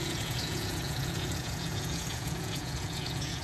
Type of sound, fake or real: fake